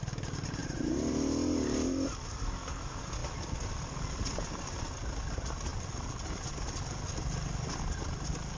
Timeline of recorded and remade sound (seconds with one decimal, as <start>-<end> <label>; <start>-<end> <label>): 0.0-8.6 recorded

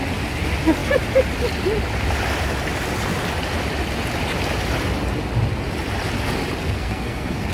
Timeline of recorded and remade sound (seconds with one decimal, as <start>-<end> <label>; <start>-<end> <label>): 0.0-6.6 recorded; 6.6-7.5 remade

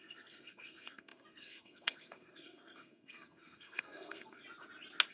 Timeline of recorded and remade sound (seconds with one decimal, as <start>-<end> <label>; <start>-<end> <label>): 0.0-4.4 remade; 4.4-5.1 recorded